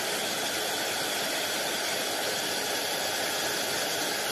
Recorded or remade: recorded